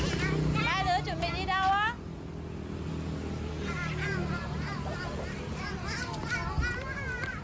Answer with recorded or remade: recorded